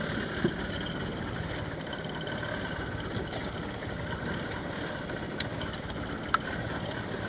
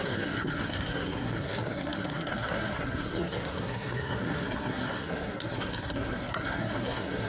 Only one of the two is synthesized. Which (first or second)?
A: second